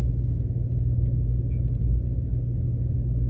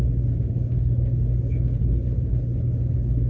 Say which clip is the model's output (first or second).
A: second